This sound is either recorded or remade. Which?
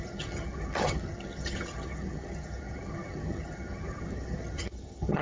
remade